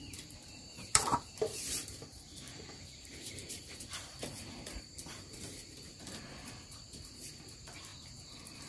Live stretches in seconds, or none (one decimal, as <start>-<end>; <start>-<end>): none